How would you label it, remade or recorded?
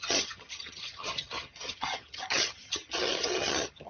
remade